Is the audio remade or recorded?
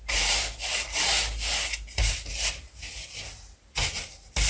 recorded